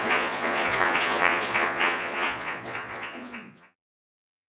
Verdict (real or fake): fake